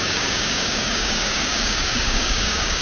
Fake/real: fake